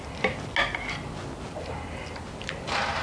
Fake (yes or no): no